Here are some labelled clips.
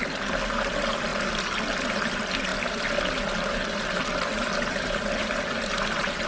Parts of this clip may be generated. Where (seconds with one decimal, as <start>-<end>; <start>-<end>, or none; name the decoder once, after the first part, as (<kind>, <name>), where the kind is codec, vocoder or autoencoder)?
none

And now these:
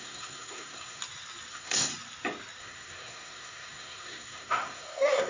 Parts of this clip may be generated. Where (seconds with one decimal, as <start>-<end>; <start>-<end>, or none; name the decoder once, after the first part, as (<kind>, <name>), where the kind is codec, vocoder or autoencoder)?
0.0-1.0 (codec, SNAC); 1.5-1.9; 2.6-5.3

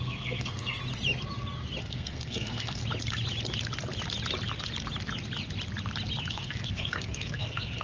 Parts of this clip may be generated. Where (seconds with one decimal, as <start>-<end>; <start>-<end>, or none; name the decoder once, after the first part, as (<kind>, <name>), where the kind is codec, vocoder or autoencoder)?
0.0-0.8 (codec, SNAC); 1.8-2.8; 6.3-7.8

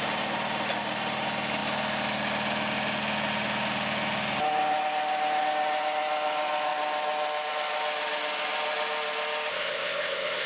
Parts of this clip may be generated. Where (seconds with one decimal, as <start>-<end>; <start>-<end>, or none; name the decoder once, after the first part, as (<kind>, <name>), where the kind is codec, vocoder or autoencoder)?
9.5-10.5 (codec, ZipCodec)